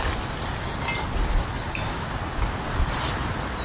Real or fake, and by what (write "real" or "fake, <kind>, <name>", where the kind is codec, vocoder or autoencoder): real